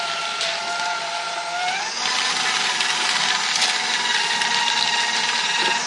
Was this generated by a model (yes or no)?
no